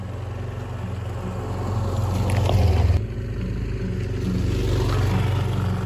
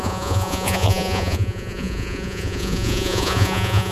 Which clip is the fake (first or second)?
second